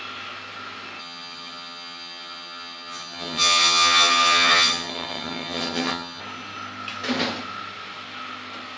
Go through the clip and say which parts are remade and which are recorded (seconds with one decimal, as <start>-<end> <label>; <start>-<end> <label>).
0.0-1.0 recorded; 1.0-6.2 remade; 6.2-8.8 recorded